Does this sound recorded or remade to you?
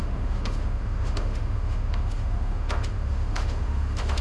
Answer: remade